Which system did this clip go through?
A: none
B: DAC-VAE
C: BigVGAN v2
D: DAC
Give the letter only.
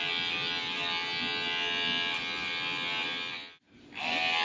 A